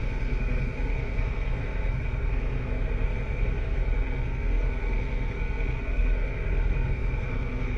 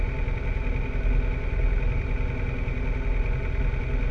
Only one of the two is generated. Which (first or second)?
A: first